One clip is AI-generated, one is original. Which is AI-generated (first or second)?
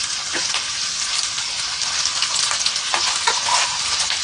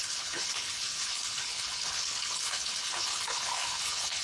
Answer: second